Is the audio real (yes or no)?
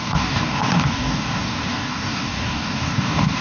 no